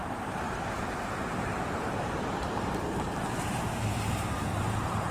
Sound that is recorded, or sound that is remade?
remade